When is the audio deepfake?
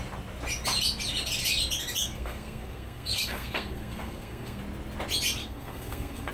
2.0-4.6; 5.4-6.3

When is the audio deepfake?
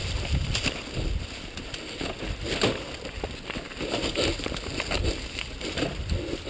none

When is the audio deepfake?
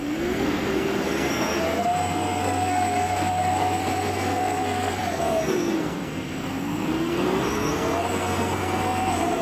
0.0-9.4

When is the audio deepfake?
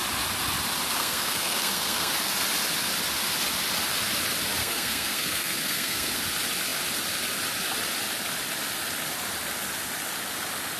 1.0-2.1; 4.6-6.2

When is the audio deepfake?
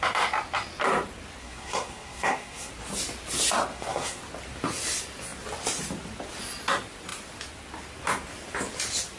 1.4-2.7; 3.7-4.2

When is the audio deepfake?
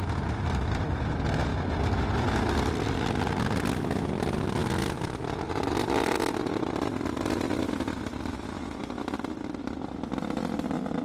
none